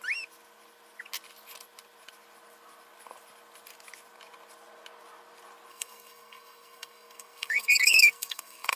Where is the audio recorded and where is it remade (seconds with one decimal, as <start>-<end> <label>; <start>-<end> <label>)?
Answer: 0.0-5.7 recorded; 5.7-8.8 remade